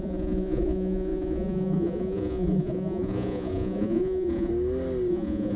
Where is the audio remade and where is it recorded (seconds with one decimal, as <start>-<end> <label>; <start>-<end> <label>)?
0.0-4.5 remade; 4.5-5.1 recorded; 5.1-5.6 remade